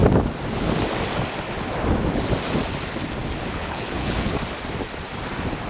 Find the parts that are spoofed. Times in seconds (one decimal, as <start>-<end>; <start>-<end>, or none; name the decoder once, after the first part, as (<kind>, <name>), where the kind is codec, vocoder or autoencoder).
3.6-4.3 (codec, HILCodec)